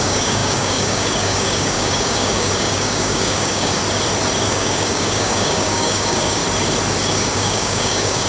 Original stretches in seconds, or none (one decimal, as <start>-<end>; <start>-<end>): 3.8-4.5; 6.4-7.0